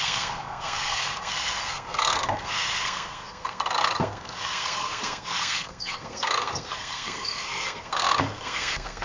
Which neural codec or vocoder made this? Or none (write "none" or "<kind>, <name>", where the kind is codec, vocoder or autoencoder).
codec, SNAC